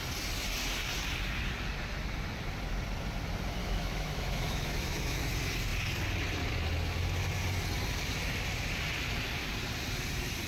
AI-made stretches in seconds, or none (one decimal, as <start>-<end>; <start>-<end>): 3.6-5.2